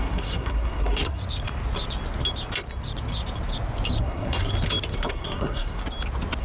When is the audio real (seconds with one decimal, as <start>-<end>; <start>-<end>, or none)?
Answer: 1.2-4.0; 4.5-5.1; 5.8-6.4